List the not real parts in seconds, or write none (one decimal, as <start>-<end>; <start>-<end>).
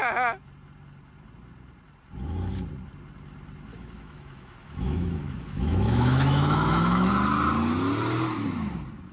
3.7-7.1